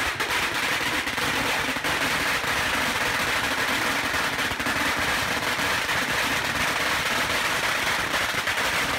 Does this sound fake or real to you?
fake